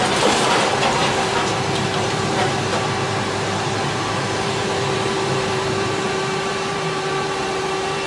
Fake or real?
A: fake